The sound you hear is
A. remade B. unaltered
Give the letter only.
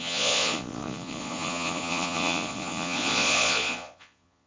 A